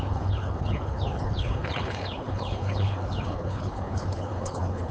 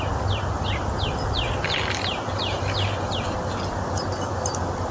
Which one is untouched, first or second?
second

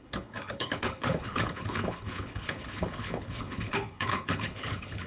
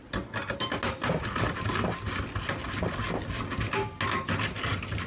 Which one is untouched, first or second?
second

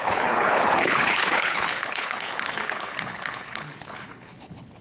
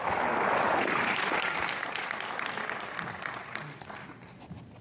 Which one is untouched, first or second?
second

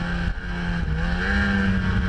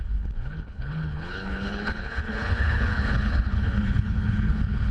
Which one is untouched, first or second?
first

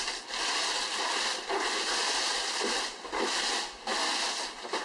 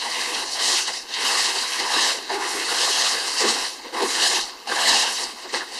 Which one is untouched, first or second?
first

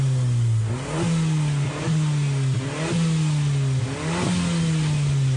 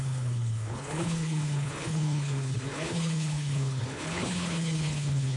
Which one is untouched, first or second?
first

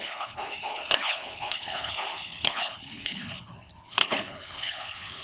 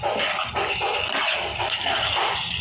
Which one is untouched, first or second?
second